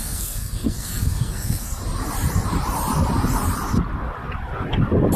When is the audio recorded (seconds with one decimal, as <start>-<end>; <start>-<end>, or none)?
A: 1.8-5.2